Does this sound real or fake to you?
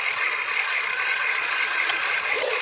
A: fake